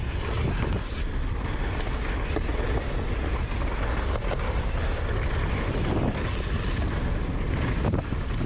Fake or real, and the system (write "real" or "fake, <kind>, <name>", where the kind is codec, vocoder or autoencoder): real